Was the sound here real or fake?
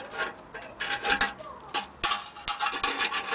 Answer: real